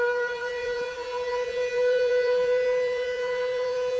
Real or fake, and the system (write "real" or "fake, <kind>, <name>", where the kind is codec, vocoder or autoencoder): fake, vocoder, BigVGAN v2